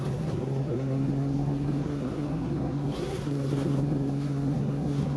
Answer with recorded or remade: remade